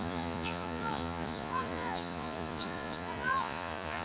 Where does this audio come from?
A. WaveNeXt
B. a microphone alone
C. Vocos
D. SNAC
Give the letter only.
C